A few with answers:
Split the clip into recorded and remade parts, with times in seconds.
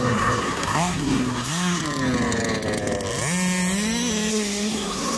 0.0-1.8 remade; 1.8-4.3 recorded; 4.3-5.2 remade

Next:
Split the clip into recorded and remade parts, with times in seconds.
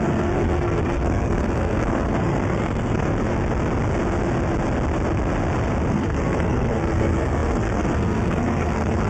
0.0-3.1 remade; 3.1-5.9 recorded; 5.9-9.1 remade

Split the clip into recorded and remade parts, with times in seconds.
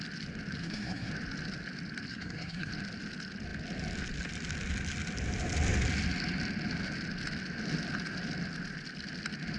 0.0-0.6 recorded; 0.6-1.1 remade; 1.1-2.1 recorded; 2.1-2.7 remade; 2.7-9.6 recorded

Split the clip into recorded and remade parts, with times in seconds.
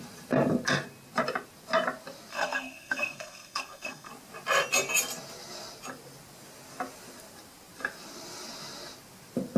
0.0-2.3 recorded; 2.3-4.1 remade; 4.1-9.6 recorded